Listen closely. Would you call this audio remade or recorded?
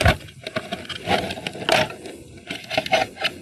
recorded